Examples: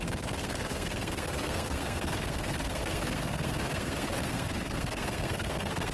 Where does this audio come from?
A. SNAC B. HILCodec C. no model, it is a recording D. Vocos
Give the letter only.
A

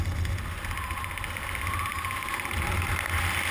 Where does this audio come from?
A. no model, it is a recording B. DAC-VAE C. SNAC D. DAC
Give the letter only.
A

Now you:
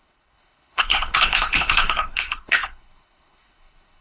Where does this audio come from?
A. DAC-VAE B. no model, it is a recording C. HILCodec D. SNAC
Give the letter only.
C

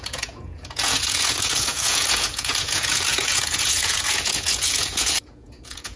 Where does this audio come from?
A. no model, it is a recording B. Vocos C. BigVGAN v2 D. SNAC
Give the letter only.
B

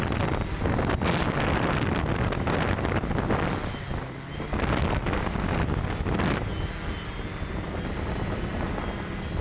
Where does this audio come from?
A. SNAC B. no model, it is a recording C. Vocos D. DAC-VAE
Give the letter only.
B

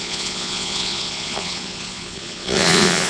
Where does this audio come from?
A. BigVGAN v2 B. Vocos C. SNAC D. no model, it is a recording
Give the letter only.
B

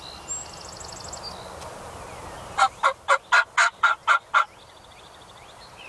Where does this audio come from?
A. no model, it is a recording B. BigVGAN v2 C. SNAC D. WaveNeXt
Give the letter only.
A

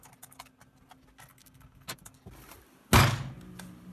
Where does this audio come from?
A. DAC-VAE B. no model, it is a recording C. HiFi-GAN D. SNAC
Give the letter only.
B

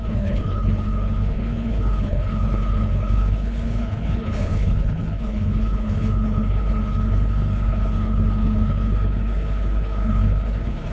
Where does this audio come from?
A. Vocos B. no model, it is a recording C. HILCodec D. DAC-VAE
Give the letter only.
C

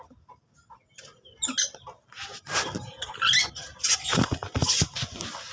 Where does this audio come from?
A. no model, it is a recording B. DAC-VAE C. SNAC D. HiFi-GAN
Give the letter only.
A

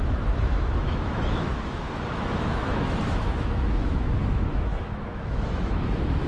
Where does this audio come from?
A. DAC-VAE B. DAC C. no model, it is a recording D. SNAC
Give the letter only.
A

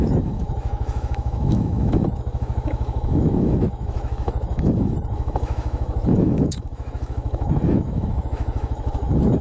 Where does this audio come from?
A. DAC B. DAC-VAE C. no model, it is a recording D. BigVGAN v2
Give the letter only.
B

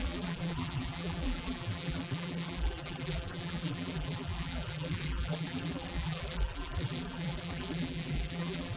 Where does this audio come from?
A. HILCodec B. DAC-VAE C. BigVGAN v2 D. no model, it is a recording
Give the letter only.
C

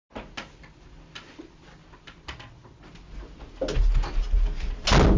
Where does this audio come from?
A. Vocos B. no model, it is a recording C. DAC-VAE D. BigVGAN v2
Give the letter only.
B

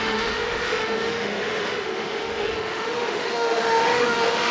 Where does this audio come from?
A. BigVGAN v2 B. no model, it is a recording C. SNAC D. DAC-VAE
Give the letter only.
D